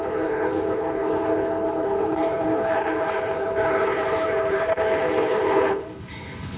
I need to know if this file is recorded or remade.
remade